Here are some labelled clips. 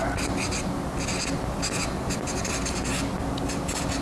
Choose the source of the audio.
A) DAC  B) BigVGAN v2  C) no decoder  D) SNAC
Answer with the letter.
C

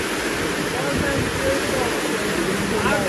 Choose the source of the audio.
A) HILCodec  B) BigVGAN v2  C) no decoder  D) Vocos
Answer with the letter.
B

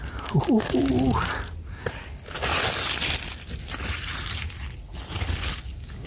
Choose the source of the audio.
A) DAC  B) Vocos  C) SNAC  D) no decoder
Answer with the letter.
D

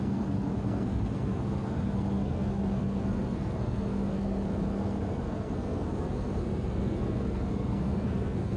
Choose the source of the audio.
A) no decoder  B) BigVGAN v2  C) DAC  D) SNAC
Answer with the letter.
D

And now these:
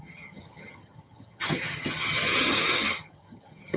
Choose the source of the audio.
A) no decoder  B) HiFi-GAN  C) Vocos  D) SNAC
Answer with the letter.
B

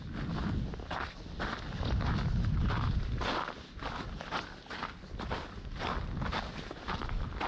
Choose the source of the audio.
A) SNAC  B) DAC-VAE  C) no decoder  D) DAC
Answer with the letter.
C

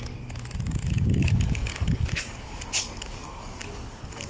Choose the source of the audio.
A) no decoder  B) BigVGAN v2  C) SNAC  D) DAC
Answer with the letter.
D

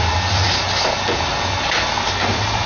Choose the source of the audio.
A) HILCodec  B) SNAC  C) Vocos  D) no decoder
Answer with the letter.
D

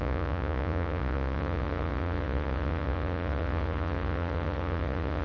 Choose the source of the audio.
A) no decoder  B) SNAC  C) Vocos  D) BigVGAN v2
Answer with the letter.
C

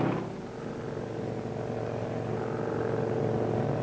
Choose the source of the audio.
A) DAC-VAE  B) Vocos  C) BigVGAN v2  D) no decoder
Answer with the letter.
D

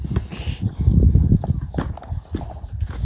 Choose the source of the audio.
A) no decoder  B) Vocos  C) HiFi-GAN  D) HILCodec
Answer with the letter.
A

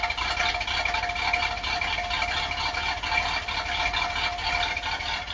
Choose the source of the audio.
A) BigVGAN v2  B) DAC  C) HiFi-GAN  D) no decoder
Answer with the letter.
D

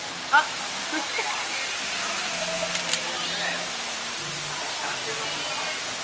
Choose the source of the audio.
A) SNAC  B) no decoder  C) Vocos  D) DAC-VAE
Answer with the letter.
B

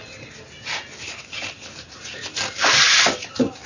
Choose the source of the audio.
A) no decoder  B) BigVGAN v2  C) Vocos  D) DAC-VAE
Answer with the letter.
A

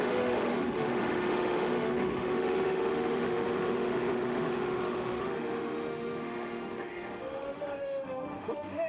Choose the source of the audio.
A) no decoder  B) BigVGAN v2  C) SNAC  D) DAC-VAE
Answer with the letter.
D